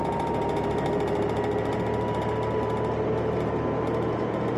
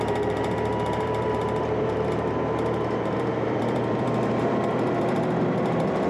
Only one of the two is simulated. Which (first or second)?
second